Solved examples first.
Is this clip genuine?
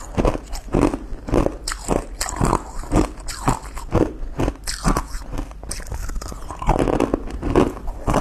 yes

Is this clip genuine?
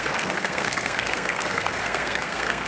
no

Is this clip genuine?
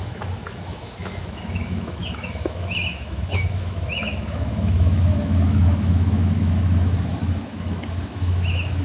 no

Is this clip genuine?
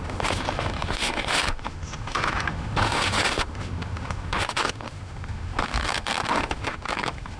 no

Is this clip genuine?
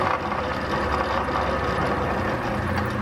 yes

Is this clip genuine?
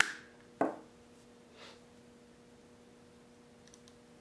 yes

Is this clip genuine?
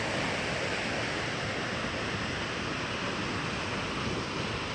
yes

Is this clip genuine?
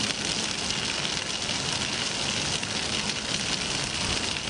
yes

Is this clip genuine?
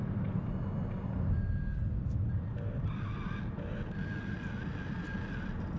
yes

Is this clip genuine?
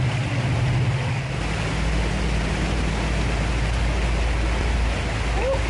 yes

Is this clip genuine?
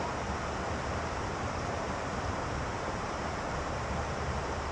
no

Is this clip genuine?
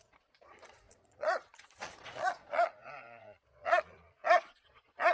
no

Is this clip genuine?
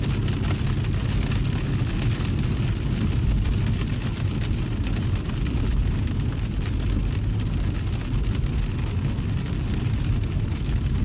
yes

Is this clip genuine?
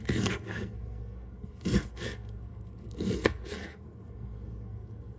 no